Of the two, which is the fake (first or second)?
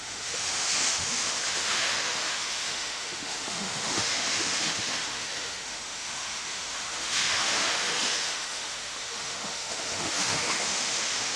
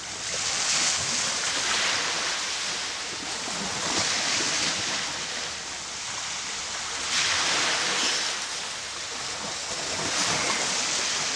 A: first